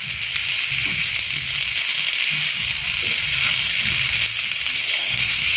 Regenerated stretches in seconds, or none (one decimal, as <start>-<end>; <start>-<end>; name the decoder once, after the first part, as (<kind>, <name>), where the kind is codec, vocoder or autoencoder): 4.8-5.6 (codec, SNAC)